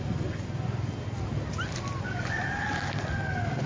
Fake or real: real